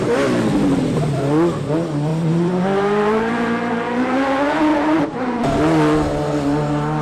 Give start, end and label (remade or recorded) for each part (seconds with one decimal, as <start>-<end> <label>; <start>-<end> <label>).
0.0-2.1 recorded; 2.1-3.3 remade; 3.3-4.7 recorded; 4.7-5.4 remade; 5.4-7.0 recorded